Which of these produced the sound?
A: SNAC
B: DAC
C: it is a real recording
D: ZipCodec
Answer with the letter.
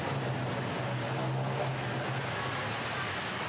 C